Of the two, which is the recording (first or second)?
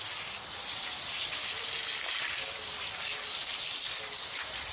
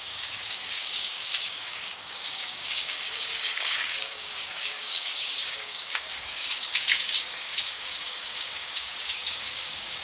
first